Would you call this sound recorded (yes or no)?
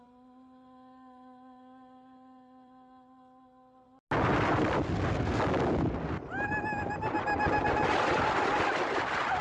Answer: yes